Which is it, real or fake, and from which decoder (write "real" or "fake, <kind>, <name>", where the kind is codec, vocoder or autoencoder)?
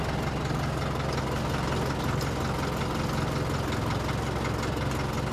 real